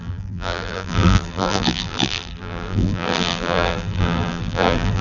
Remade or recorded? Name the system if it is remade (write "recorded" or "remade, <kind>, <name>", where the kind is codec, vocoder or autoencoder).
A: remade, vocoder, BigVGAN v2